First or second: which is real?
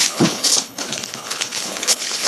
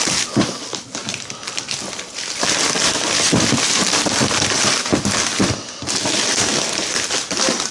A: second